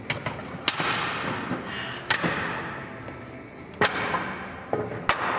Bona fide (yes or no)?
yes